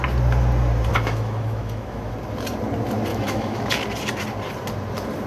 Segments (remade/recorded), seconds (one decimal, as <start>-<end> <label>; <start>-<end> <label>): 0.0-0.9 recorded; 0.9-2.1 remade; 2.1-3.1 recorded; 3.1-3.7 remade; 3.7-5.3 recorded